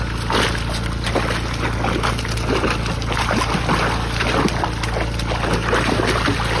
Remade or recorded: recorded